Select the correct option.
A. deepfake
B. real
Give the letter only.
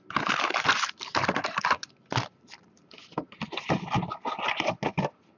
B